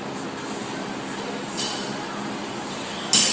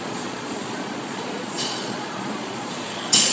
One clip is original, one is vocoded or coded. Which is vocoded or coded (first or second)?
second